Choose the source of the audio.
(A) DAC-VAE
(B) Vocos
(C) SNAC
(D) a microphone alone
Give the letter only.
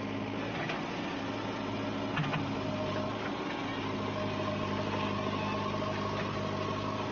D